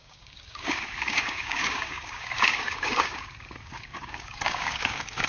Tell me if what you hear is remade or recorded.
remade